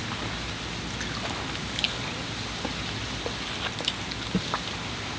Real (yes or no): yes